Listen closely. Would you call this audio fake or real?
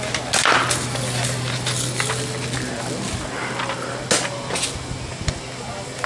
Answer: real